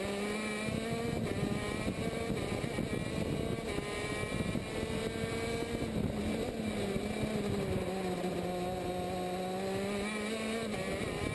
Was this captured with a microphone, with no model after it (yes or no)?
yes